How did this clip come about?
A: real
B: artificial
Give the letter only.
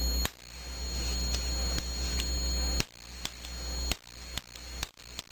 A